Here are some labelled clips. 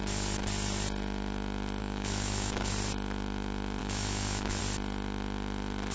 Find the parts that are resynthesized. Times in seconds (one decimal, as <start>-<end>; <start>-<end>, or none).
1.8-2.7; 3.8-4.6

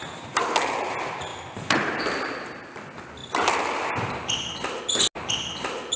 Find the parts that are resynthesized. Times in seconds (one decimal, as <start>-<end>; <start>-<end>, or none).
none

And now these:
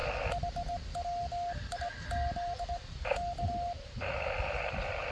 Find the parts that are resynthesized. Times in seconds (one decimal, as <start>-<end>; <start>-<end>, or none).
none

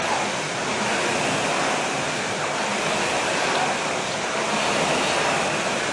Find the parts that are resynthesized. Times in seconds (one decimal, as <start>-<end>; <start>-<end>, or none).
none